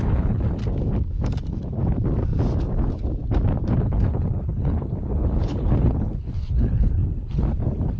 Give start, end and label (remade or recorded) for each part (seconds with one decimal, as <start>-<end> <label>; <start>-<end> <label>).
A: 0.0-0.6 remade; 0.6-3.8 recorded; 3.8-8.0 remade